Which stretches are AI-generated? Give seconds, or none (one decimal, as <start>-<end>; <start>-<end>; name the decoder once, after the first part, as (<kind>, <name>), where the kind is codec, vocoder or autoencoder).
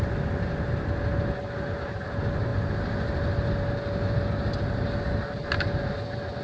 none